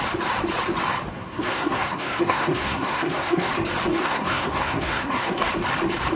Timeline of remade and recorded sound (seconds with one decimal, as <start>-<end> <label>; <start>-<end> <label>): 0.0-1.1 recorded; 1.1-3.5 remade; 3.5-4.0 recorded; 4.0-5.5 remade; 5.5-6.2 recorded